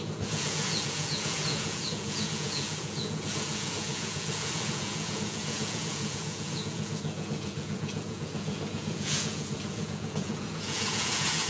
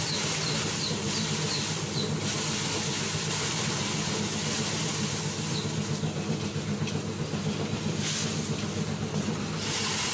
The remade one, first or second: first